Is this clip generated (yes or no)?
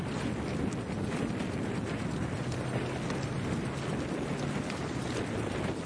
no